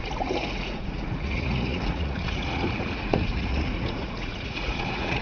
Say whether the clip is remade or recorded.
remade